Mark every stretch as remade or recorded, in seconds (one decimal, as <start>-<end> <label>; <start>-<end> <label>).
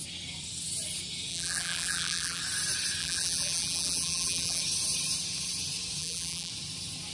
0.0-1.3 recorded; 1.3-2.4 remade; 2.4-3.0 recorded; 3.0-4.6 remade; 4.6-6.0 recorded; 6.0-6.5 remade; 6.5-7.1 recorded